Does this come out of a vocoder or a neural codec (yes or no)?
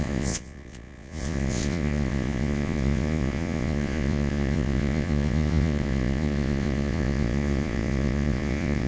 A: yes